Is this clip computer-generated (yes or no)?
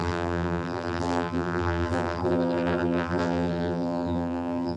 yes